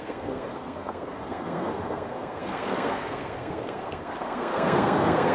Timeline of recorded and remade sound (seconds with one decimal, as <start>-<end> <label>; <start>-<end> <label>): 0.0-5.3 remade